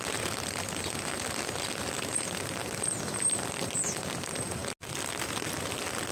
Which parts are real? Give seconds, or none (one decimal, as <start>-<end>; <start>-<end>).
0.0-6.1